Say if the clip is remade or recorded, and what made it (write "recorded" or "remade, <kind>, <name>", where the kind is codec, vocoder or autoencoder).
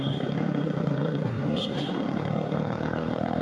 remade, codec, SNAC